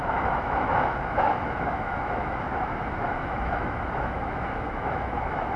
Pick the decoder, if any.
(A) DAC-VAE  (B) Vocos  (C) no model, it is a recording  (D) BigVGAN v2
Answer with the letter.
A